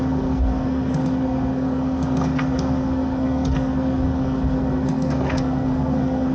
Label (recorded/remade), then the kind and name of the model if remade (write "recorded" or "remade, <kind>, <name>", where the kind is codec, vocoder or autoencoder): remade, codec, SNAC